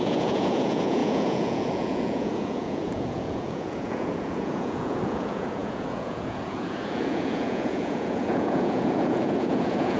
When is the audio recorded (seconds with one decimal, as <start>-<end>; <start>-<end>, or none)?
none